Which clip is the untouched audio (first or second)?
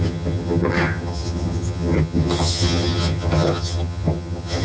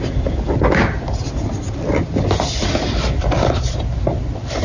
second